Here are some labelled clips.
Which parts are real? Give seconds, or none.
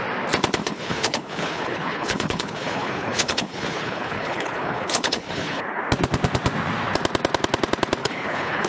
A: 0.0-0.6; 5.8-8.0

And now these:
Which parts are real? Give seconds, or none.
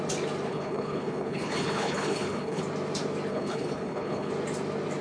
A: 0.0-0.5; 2.6-3.3; 4.3-5.0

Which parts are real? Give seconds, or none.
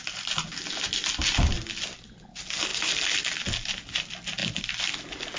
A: 0.0-5.4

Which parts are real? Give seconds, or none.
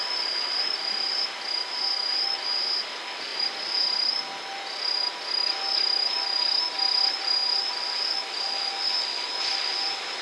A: 0.0-10.2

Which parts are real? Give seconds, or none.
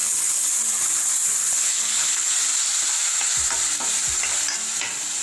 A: 0.5-1.4; 2.3-5.2